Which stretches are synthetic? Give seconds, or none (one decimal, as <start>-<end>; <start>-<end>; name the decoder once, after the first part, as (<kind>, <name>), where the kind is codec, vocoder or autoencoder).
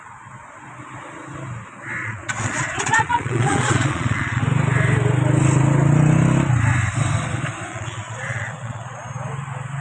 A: 2.0-4.4 (vocoder, Vocos); 7.7-9.0